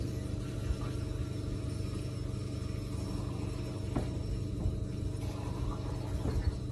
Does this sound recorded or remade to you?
recorded